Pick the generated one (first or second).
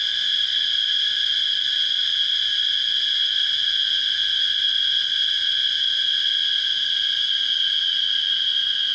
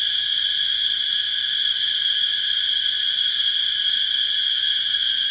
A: second